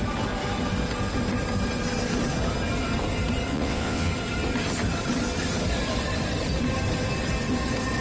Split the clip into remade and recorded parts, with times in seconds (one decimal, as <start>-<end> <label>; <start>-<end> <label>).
0.0-3.5 recorded; 3.5-4.1 remade; 4.1-8.0 recorded